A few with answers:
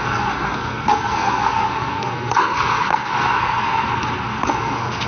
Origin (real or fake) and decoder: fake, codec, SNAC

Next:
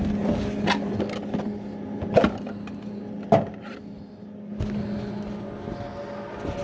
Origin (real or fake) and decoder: real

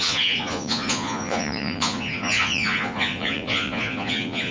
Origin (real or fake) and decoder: fake, vocoder, Vocos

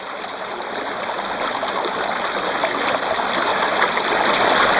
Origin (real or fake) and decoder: real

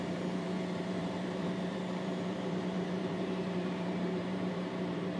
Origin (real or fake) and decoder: fake, vocoder, BigVGAN v2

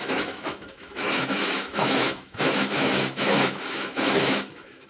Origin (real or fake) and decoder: fake, autoencoder, DAC-VAE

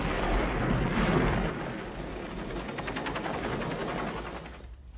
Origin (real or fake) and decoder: real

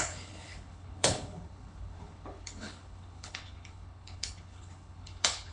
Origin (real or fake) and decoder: fake, codec, HILCodec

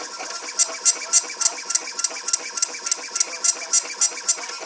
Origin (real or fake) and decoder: real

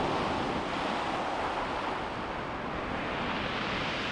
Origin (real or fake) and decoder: real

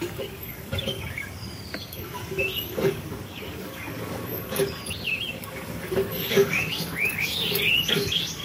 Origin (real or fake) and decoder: fake, codec, DAC